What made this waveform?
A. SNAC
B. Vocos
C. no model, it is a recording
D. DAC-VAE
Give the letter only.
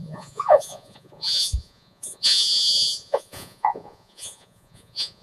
B